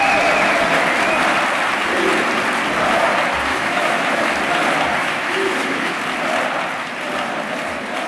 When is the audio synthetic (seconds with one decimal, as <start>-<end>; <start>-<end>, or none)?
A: 3.5-4.2; 5.0-6.0